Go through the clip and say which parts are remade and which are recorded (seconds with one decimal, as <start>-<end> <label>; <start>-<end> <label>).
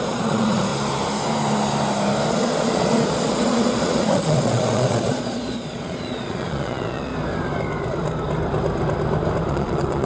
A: 0.0-0.7 remade; 0.7-2.3 recorded; 2.3-7.1 remade; 7.1-9.5 recorded; 9.5-10.1 remade